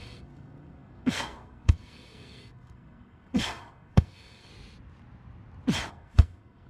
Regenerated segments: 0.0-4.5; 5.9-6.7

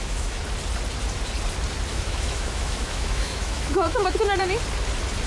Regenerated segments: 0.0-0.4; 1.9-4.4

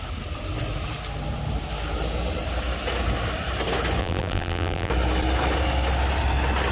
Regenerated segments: 4.0-4.9